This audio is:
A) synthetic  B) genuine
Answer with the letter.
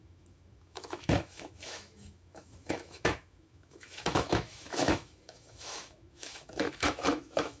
A